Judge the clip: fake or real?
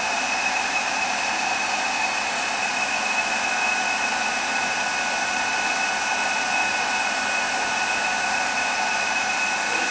real